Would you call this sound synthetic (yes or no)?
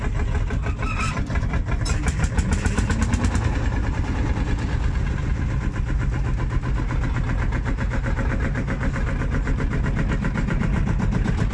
no